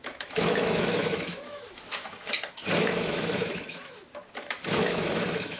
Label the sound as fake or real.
fake